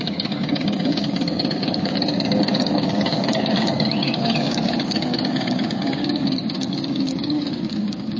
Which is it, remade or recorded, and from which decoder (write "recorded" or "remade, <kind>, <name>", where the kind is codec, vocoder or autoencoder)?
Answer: remade, codec, DAC